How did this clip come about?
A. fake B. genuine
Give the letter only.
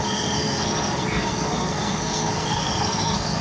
A